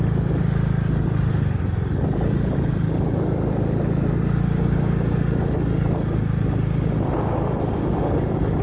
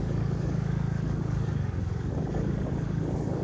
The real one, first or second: first